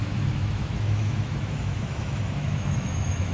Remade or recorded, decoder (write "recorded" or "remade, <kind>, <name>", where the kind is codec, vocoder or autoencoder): remade, autoencoder, DAC-VAE